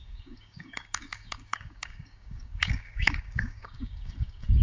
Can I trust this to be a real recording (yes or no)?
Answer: no